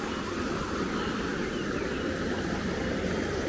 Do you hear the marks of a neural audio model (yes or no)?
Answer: no